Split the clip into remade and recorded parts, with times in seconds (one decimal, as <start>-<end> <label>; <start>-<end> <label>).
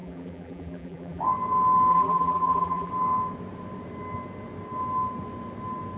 0.0-1.2 remade; 1.2-1.9 recorded; 1.9-2.9 remade; 2.9-6.0 recorded